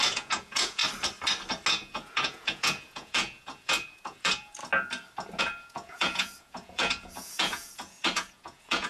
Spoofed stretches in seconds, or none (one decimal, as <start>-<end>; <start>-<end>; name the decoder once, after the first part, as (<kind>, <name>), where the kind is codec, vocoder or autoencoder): 0.0-0.8 (vocoder, Vocos); 1.7-4.6; 5.4-8.9